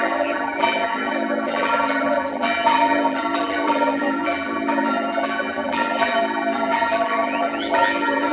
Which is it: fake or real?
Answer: fake